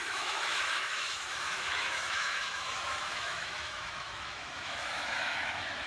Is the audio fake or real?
fake